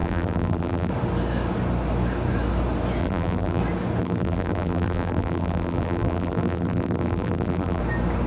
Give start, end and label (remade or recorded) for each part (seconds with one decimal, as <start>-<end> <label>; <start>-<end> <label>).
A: 0.0-0.9 remade; 0.9-3.0 recorded; 3.0-3.6 remade; 3.6-4.0 recorded; 4.0-7.8 remade; 7.8-8.3 recorded